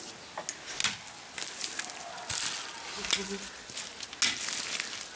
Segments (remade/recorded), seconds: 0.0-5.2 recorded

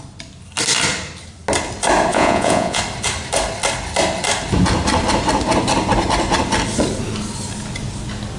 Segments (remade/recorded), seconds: 0.0-2.1 recorded; 2.1-2.8 remade; 2.8-8.4 recorded

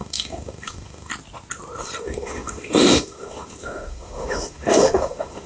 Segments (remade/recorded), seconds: 0.0-1.1 remade; 1.1-2.0 recorded; 2.0-5.5 remade